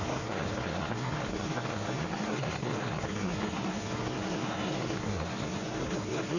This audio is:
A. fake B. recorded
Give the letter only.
A